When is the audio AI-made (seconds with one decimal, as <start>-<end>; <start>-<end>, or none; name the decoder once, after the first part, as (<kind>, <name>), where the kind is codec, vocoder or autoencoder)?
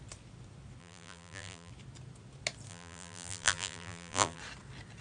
0.8-1.7 (vocoder, BigVGAN v2); 2.7-4.4